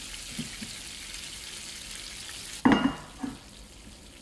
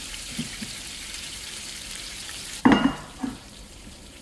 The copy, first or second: second